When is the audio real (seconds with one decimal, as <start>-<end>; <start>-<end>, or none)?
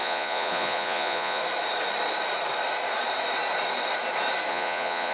1.4-4.5